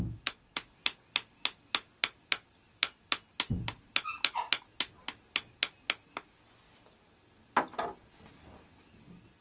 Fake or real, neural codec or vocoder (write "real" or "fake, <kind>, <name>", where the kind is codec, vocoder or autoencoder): real